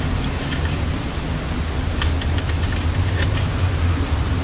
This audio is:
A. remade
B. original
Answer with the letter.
B